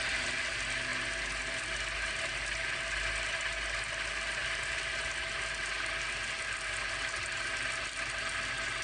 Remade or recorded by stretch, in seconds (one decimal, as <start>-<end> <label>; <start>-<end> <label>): 0.0-8.8 recorded